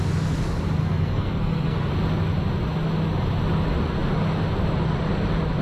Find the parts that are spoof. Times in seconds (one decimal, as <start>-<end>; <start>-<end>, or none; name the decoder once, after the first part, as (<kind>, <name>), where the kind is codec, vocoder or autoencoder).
0.8-1.9 (codec, SNAC)